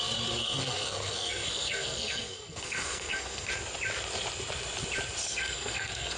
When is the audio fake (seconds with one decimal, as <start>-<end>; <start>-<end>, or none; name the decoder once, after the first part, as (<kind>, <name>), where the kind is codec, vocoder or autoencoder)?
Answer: 0.4-3.5 (codec, SNAC); 5.2-6.2